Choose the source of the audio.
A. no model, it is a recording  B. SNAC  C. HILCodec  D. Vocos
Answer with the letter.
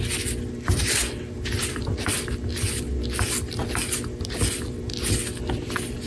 A